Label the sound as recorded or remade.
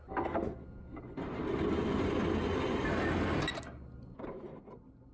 recorded